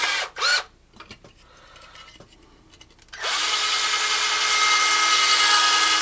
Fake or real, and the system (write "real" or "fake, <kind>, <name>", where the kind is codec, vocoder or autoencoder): real